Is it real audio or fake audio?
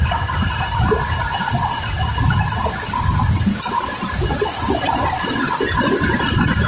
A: real